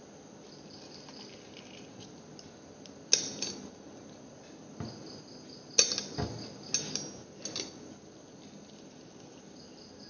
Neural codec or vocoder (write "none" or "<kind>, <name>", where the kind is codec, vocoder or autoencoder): none